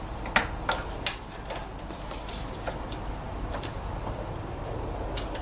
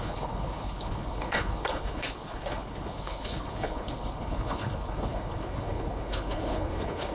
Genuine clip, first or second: first